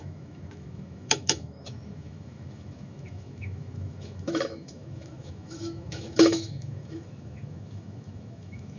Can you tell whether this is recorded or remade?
remade